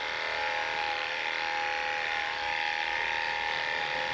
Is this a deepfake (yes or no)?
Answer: yes